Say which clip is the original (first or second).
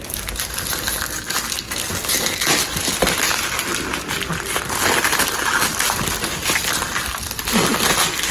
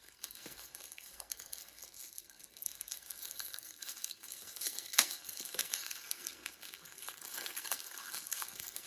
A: first